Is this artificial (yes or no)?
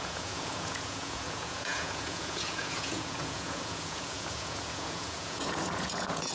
yes